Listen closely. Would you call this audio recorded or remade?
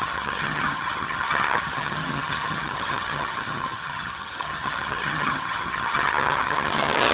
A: remade